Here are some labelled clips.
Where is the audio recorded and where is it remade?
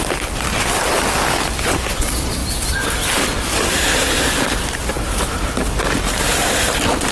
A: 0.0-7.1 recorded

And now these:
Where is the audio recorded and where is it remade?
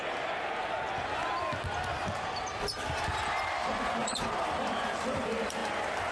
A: 0.0-3.0 recorded; 3.0-6.1 remade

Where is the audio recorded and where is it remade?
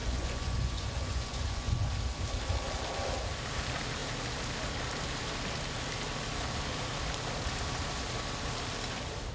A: 0.0-1.9 remade; 1.9-9.3 recorded